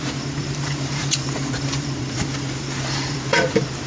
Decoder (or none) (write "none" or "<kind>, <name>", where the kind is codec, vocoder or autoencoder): vocoder, BigVGAN v2